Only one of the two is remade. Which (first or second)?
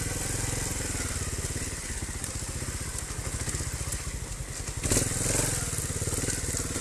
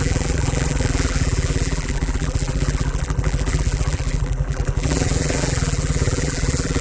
second